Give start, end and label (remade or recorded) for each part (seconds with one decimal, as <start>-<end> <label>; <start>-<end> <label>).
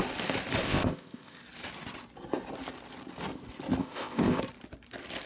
0.0-0.6 recorded; 0.6-1.4 remade; 1.4-3.8 recorded; 3.8-4.4 remade; 4.4-5.3 recorded